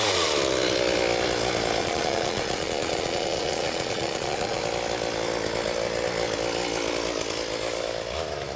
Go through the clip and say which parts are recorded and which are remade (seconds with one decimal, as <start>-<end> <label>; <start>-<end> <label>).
0.0-1.8 recorded; 1.8-4.6 remade; 4.6-8.6 recorded